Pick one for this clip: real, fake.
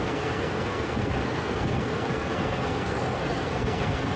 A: fake